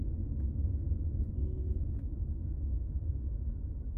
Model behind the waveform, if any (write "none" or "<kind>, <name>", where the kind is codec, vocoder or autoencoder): autoencoder, DAC-VAE